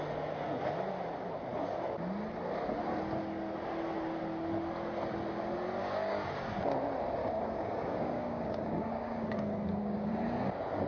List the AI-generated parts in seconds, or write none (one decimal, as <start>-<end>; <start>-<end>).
5.8-6.7; 7.2-10.1